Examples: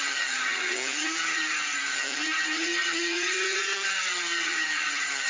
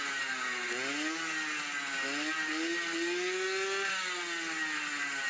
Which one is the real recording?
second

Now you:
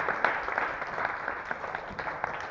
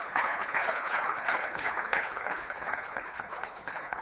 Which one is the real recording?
first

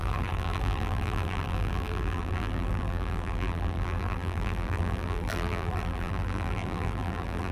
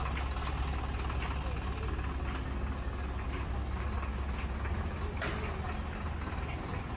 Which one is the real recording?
second